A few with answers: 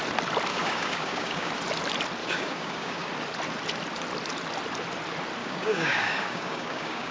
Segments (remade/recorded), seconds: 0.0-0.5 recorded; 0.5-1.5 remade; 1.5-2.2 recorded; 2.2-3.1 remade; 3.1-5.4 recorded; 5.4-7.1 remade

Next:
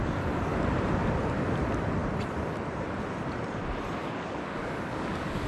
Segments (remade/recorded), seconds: 0.0-4.0 recorded; 4.0-5.5 remade

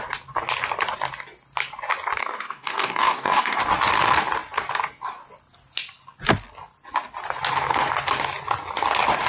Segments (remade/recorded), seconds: 0.0-2.2 recorded; 2.2-3.6 remade; 3.6-9.3 recorded

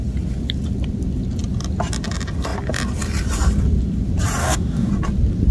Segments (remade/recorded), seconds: 0.0-4.4 recorded; 4.4-4.9 remade; 4.9-5.5 recorded